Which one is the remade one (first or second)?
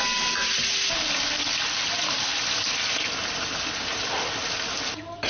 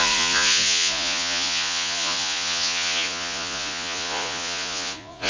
second